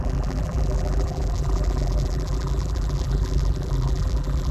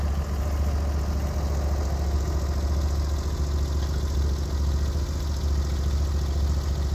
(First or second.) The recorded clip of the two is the second